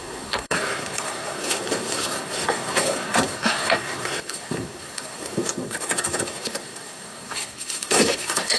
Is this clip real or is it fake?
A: fake